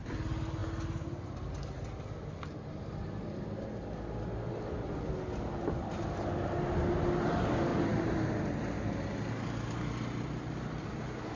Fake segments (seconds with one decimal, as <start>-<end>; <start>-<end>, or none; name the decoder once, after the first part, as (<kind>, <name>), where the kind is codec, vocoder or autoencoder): none